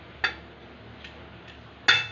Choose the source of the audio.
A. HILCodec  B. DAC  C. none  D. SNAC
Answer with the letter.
C